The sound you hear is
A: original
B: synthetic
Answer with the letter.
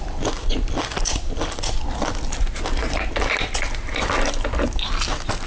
A